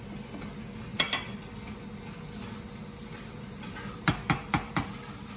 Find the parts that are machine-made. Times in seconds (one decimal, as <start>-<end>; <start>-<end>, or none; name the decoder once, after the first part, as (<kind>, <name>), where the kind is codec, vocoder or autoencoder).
none